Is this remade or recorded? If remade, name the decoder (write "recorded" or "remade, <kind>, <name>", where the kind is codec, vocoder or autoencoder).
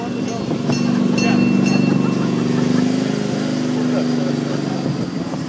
recorded